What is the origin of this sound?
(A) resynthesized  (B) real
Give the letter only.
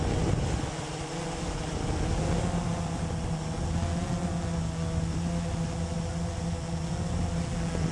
B